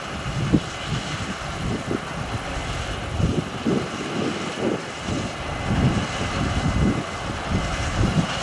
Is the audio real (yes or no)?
yes